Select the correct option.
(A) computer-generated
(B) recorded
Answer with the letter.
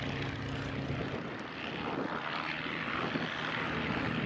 B